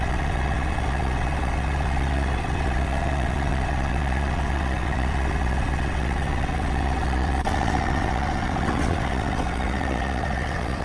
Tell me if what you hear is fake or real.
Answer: fake